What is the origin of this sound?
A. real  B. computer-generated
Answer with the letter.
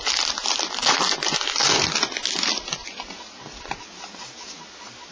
A